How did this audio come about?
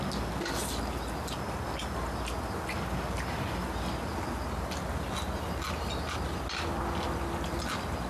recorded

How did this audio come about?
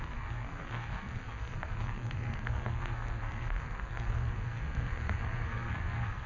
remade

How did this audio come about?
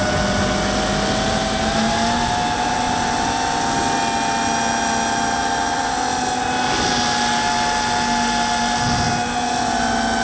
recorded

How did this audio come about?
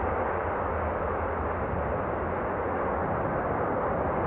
recorded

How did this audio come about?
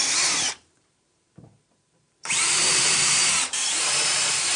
remade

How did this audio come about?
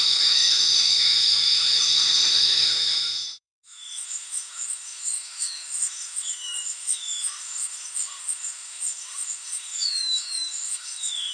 remade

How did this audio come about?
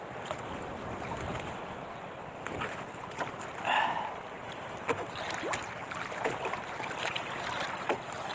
recorded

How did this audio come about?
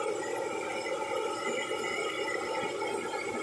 recorded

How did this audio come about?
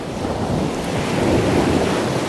recorded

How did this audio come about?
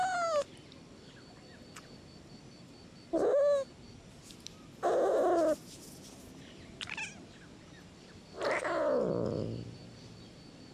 recorded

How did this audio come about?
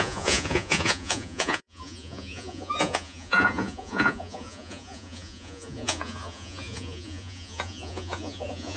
remade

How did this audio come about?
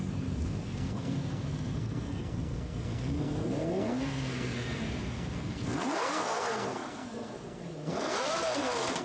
remade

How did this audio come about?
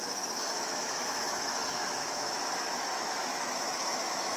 remade